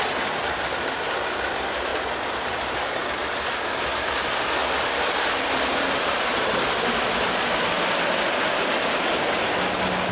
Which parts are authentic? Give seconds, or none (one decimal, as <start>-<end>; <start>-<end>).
0.0-1.9; 3.0-10.1